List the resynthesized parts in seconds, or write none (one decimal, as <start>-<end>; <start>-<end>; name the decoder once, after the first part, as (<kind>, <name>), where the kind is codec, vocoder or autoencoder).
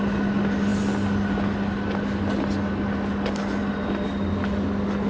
none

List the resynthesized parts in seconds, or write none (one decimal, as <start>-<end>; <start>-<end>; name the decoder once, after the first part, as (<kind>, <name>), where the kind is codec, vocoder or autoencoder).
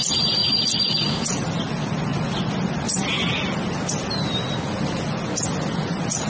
none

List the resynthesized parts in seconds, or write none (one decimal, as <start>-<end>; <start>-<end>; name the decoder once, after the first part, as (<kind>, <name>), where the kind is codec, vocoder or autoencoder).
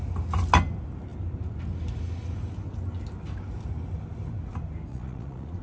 4.9-5.6 (vocoder, Vocos)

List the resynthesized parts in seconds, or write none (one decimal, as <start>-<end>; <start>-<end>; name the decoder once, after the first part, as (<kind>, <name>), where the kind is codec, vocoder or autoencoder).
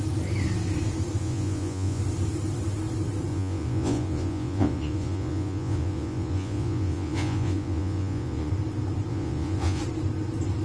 1.2-2.0 (vocoder, Vocos); 3.3-8.5; 9.1-9.8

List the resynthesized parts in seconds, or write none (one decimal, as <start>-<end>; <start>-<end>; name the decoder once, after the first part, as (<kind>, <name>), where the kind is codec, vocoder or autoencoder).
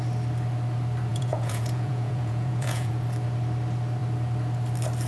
1.1-2.9 (vocoder, Vocos)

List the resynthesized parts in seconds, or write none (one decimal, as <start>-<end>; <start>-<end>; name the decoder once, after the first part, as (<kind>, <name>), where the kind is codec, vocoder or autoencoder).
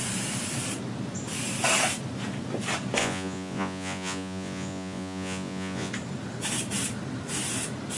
3.0-5.9 (vocoder, Vocos)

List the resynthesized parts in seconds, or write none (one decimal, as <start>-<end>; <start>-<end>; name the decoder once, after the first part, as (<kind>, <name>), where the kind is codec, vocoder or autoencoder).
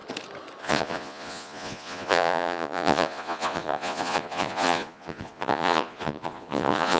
0.6-7.0 (vocoder, Vocos)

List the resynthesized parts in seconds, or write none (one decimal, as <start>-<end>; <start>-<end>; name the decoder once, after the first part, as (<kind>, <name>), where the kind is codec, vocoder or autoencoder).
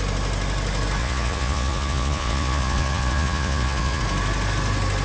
1.0-4.0 (vocoder, Vocos)